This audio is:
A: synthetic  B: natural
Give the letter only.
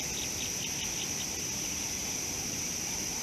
B